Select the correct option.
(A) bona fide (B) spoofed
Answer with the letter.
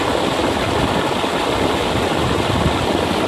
A